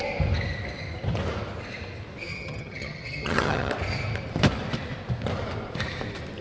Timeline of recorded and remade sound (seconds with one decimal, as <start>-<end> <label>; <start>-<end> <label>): 0.0-2.3 recorded; 2.3-3.7 remade; 3.7-6.4 recorded